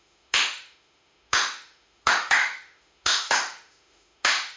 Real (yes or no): no